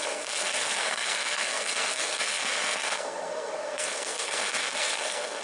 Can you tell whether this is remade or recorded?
remade